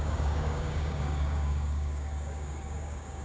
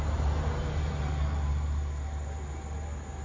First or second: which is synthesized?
first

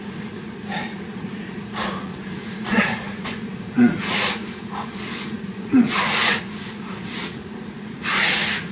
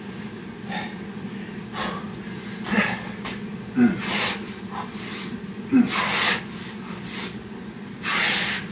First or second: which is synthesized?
first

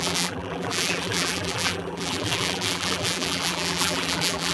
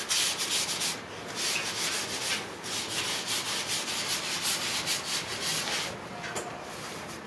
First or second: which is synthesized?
first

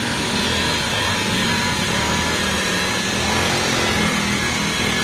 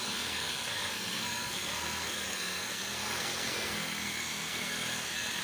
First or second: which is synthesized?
second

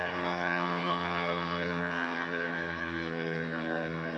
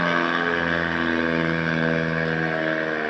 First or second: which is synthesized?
first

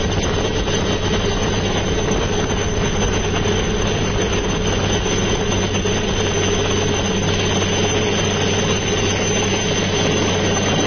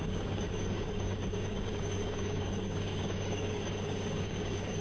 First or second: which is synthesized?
second